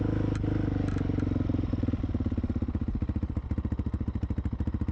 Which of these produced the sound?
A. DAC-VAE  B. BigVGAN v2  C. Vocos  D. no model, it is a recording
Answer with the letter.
D